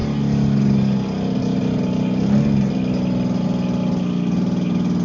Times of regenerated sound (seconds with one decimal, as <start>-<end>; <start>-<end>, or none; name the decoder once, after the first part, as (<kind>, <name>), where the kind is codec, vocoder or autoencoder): none

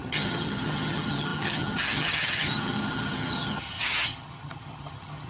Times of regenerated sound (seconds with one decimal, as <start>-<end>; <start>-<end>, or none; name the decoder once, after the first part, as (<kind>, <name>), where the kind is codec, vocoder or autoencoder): 0.0-5.3 (vocoder, HiFi-GAN)

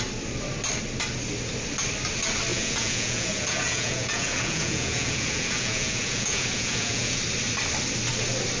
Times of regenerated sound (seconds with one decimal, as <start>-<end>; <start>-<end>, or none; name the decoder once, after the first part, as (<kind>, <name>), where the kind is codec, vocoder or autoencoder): 2.5-7.2 (vocoder, Vocos)

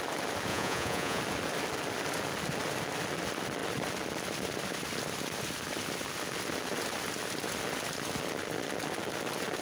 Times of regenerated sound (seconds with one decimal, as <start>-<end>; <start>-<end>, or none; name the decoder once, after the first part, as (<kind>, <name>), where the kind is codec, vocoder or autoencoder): 0.5-1.2 (vocoder, Vocos)

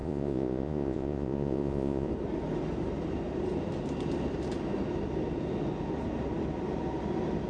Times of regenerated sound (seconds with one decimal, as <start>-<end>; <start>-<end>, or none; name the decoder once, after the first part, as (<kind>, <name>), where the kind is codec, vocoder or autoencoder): 0.0-2.1 (vocoder, Vocos)

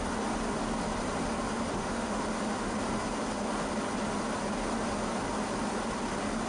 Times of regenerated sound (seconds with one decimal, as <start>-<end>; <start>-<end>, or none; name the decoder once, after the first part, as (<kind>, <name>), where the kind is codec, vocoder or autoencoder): 1.7-2.2 (autoencoder, DAC-VAE)

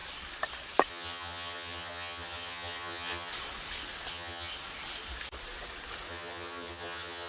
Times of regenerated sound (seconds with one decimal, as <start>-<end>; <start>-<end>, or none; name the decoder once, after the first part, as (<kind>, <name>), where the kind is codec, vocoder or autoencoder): 0.9-3.3 (vocoder, HiFi-GAN); 4.1-4.5; 6.1-7.3